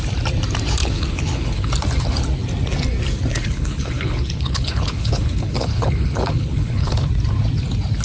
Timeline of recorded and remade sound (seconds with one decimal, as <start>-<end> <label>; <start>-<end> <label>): 0.0-0.8 recorded; 0.8-1.7 remade; 1.7-3.3 recorded; 3.3-7.1 remade; 7.1-8.0 recorded